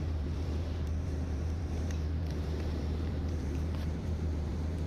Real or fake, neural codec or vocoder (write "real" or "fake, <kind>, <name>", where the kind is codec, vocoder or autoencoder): fake, vocoder, BigVGAN v2